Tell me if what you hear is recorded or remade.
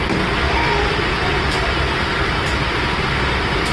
remade